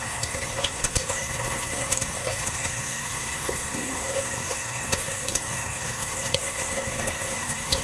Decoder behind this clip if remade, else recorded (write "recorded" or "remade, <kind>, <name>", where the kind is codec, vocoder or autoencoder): remade, codec, SNAC